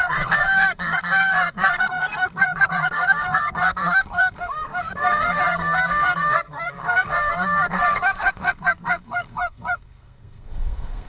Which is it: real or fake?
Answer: fake